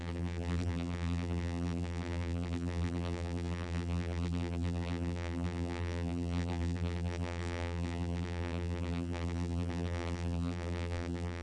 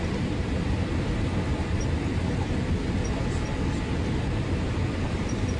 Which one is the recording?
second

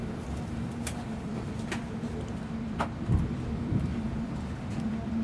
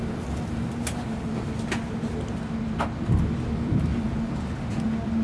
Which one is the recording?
second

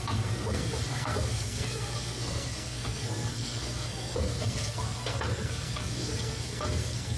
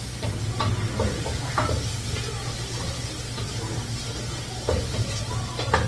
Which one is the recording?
second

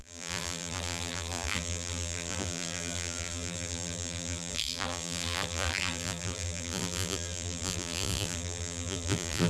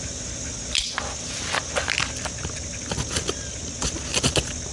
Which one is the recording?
second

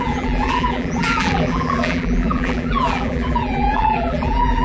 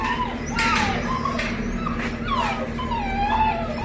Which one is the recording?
second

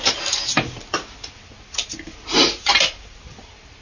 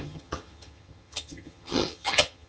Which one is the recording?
first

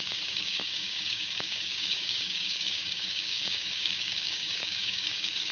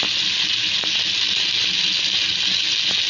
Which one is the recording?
second